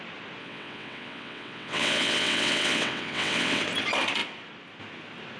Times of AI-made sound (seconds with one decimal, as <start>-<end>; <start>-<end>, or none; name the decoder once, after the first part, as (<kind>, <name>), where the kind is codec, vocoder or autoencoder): 0.4-3.6 (vocoder, WaveNeXt)